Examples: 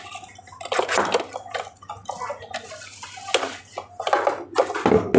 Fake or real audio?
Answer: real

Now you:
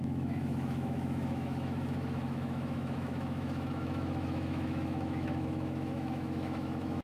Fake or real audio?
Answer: fake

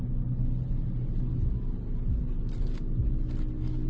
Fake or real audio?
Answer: real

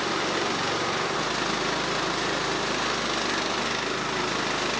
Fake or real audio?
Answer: real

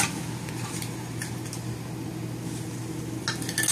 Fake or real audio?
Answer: real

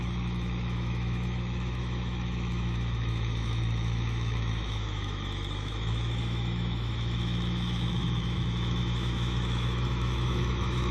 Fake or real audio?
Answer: fake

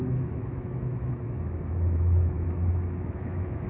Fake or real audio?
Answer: fake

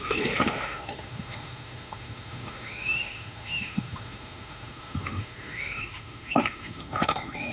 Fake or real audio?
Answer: fake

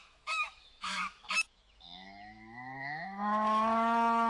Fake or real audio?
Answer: fake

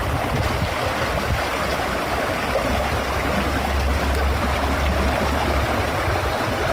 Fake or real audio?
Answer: real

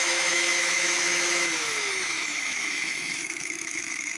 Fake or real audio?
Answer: fake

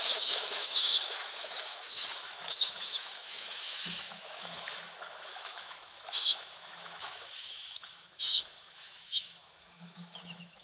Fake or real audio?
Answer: fake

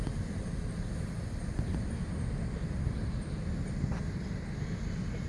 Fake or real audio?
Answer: real